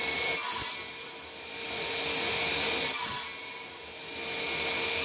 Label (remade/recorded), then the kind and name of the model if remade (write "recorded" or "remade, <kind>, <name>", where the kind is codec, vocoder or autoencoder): recorded